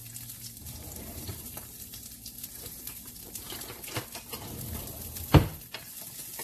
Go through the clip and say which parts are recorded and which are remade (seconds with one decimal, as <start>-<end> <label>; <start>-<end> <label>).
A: 0.0-0.6 recorded; 0.6-4.0 remade; 4.0-6.4 recorded